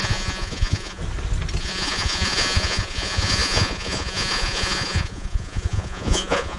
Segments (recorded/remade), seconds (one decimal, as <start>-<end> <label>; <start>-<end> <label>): 0.0-1.0 remade; 1.0-1.6 recorded; 1.6-6.6 remade